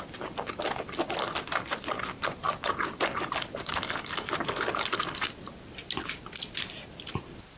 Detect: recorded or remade recorded